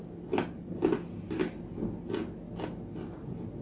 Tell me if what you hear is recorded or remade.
recorded